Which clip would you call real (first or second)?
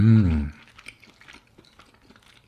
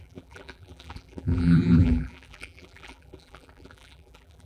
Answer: first